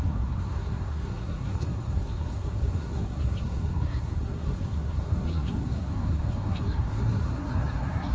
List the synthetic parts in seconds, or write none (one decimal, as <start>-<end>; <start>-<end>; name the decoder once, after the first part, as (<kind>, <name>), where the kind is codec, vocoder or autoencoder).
0.0-8.1 (codec, SNAC)